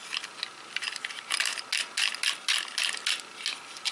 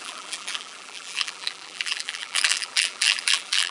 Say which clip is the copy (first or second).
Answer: second